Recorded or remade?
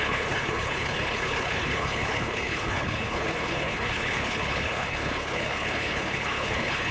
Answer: remade